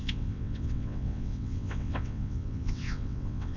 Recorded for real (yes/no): no